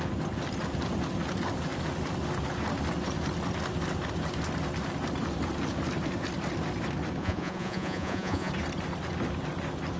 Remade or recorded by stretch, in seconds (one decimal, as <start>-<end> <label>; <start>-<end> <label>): 0.0-7.2 recorded; 7.2-8.5 remade; 8.5-10.0 recorded